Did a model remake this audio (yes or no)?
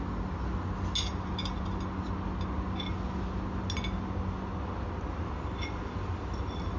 no